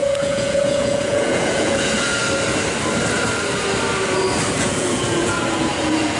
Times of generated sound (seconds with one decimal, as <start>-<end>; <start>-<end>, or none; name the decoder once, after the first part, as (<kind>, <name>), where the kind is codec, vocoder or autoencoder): 0.0-2.2 (vocoder, Vocos); 4.5-6.2